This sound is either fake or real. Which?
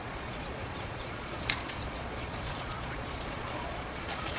fake